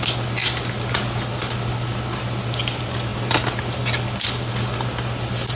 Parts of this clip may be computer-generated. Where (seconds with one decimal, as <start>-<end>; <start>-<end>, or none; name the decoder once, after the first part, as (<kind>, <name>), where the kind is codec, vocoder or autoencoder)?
none